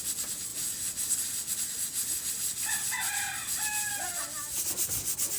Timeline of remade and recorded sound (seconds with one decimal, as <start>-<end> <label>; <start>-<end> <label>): 0.0-5.4 recorded